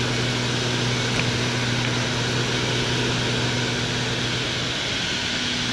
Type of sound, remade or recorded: recorded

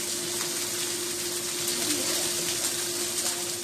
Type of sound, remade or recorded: recorded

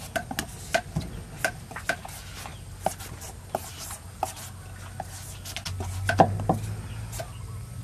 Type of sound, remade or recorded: recorded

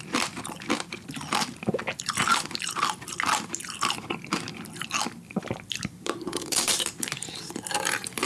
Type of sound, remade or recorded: remade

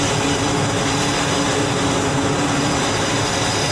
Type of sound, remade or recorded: recorded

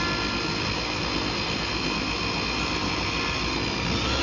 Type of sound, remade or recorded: recorded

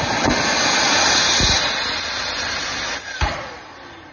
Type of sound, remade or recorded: recorded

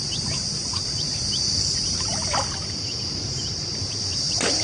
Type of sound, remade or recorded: remade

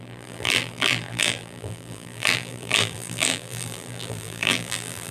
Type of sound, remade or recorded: remade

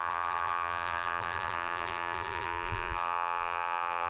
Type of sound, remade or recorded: remade